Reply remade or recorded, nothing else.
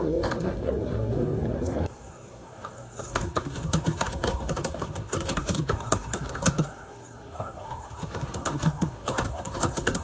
remade